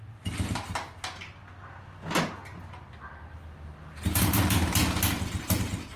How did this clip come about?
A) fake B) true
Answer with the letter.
B